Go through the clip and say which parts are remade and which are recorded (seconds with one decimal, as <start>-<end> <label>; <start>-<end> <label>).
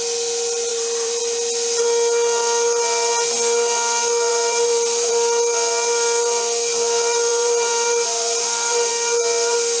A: 0.0-0.7 recorded; 0.7-1.2 remade; 1.2-4.3 recorded; 4.3-5.1 remade; 5.1-7.3 recorded; 7.3-8.9 remade; 8.9-9.8 recorded